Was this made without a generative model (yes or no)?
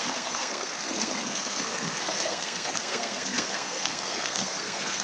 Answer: no